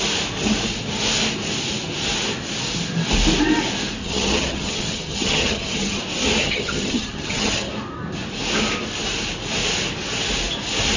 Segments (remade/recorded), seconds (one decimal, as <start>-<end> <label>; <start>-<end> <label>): 0.0-4.0 recorded; 4.0-6.0 remade; 6.0-6.4 recorded; 6.4-7.7 remade; 7.7-11.0 recorded